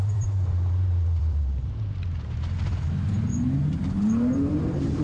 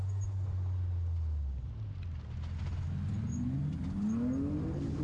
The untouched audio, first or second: second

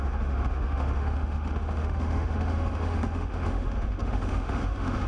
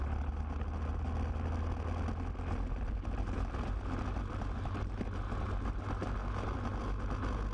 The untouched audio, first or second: second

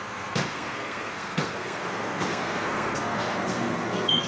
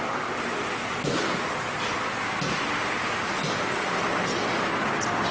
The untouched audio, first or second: second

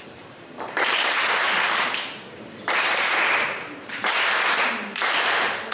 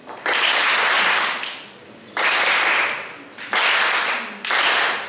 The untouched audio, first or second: second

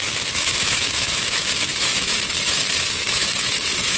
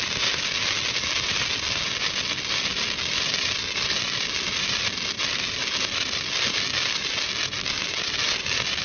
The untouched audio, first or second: second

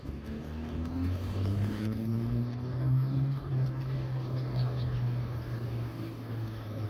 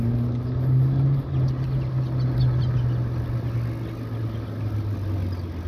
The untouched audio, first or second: second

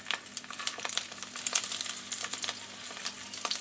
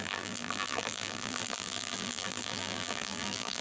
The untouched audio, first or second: first